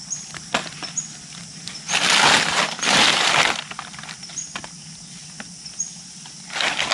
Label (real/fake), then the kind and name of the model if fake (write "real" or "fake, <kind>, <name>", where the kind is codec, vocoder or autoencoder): real